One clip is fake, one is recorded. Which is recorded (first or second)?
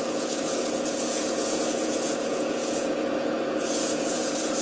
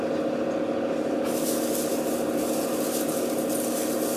second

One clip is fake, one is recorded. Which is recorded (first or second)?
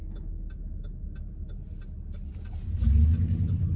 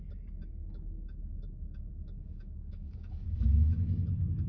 first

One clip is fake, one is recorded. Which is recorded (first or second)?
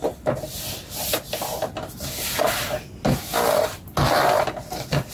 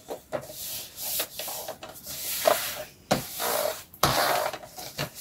first